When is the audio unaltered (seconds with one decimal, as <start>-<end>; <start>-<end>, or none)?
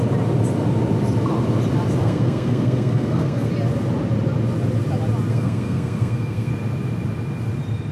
0.0-2.0; 3.5-5.3; 6.5-7.9